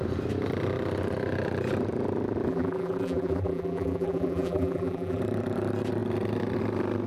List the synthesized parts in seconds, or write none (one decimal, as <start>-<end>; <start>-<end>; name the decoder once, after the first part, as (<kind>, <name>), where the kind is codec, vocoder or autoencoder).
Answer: 2.5-5.2 (vocoder, BigVGAN v2)